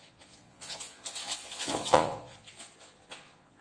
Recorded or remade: remade